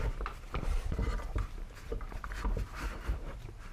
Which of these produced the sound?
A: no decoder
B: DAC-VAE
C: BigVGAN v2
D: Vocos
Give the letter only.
A